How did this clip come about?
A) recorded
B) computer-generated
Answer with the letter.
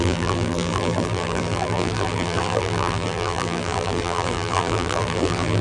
B